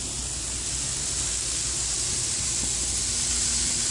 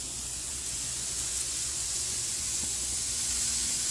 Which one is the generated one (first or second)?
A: second